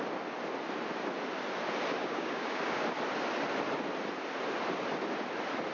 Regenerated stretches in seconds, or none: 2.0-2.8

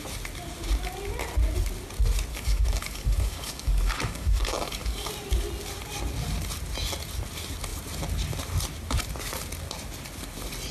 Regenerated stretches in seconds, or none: 2.3-5.1

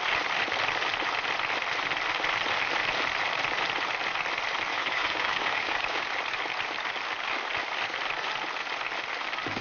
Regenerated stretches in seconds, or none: 4.7-6.1

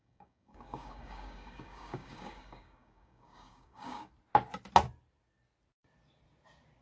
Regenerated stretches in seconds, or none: 0.0-4.1

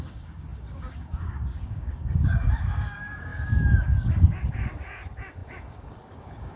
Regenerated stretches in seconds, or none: 0.0-6.6

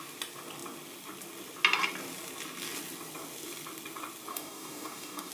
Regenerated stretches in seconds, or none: 4.3-5.3